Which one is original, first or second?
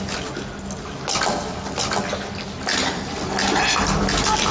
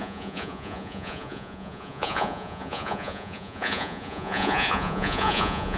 first